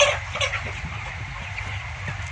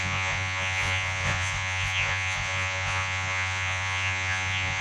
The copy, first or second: second